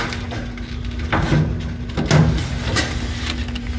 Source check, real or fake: real